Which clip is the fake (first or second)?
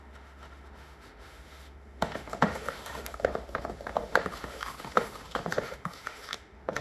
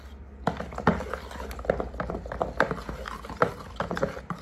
first